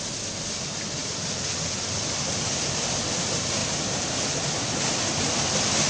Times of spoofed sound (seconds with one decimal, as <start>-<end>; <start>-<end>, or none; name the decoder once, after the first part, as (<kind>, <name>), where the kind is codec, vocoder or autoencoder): none